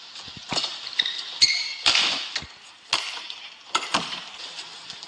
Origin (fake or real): real